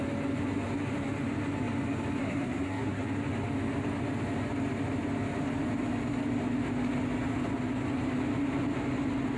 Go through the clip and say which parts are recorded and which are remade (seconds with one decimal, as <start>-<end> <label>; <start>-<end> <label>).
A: 0.0-2.2 recorded; 2.2-3.0 remade; 3.0-9.4 recorded

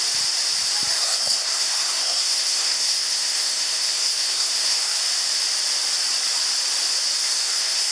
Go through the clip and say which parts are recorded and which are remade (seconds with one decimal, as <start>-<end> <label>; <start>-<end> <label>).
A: 0.0-0.9 recorded; 0.9-5.0 remade; 5.0-7.2 recorded; 7.2-7.9 remade

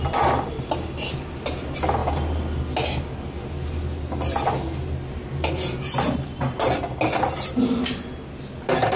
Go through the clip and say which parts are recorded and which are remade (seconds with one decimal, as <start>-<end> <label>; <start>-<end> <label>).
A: 0.0-9.0 recorded

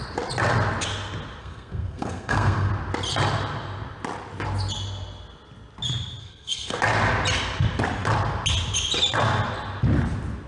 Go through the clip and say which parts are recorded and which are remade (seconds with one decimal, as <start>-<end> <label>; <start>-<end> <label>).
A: 0.0-1.4 recorded; 1.4-2.7 remade; 2.7-6.2 recorded; 6.2-6.8 remade; 6.8-10.5 recorded